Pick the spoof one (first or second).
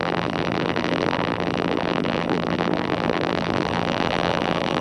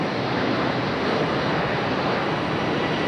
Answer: first